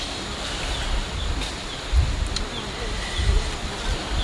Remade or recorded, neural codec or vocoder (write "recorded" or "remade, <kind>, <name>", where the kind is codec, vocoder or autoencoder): recorded